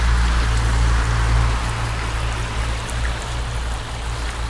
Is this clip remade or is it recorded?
recorded